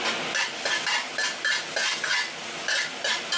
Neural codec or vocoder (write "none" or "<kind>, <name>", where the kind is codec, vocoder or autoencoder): none